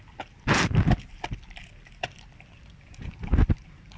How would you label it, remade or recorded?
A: recorded